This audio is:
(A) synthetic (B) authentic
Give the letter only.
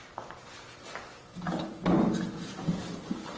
B